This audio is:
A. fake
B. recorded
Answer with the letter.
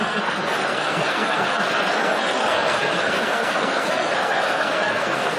A